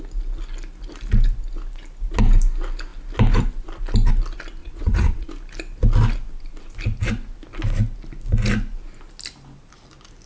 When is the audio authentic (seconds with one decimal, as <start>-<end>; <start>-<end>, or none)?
0.0-4.6; 5.3-10.3